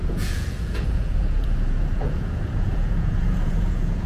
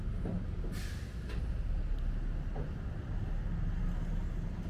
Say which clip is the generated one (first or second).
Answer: first